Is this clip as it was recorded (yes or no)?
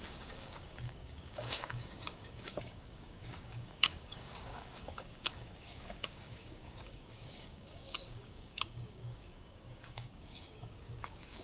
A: no